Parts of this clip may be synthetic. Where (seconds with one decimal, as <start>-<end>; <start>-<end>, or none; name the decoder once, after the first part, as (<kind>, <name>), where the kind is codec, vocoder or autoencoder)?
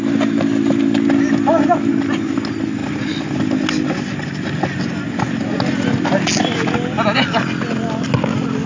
none